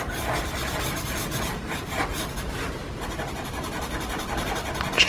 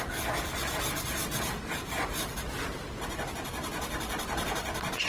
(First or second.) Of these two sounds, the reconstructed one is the first